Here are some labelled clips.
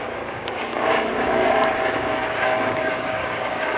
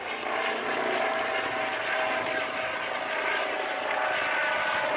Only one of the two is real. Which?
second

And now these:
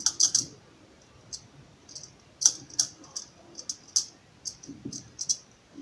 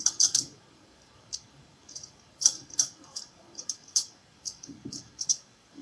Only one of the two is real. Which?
first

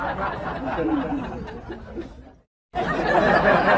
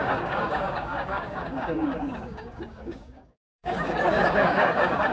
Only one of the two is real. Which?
first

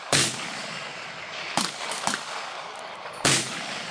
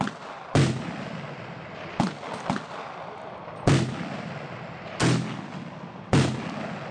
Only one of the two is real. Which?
second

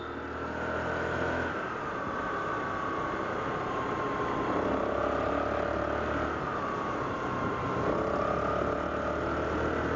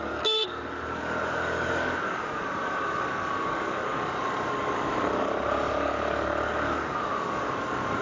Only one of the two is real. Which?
first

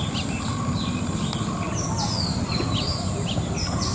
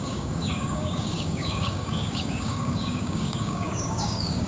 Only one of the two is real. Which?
first